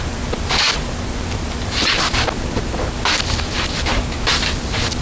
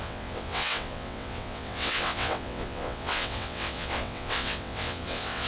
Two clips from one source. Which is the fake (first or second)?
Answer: second